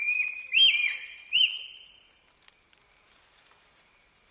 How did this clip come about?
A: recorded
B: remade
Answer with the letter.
B